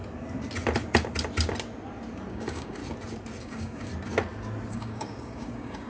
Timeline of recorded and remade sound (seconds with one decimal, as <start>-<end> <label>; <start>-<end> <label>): 0.0-2.3 recorded; 2.3-2.8 remade; 2.8-3.4 recorded; 3.4-3.9 remade; 3.9-4.7 recorded; 4.7-5.9 remade